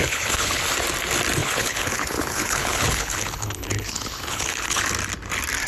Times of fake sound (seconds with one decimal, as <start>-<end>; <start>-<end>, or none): 0.0-0.6; 1.4-4.8